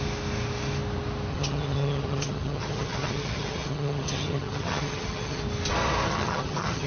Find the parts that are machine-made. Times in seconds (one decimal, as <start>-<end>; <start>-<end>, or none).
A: 1.3-5.4; 6.1-6.9